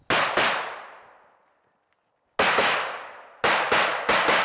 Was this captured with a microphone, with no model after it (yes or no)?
yes